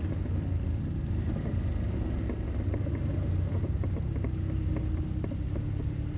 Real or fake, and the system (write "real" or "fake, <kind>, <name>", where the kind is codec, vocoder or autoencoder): real